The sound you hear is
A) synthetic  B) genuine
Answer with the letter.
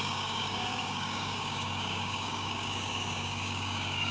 A